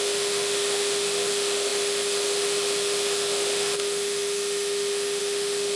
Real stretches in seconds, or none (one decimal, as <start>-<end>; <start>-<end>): none